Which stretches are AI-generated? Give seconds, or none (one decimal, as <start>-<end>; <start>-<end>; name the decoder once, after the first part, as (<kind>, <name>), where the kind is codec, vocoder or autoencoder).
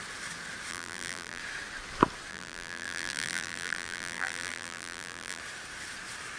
0.7-1.4 (vocoder, BigVGAN v2); 2.3-5.4